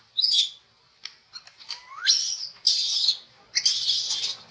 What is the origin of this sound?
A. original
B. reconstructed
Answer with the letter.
A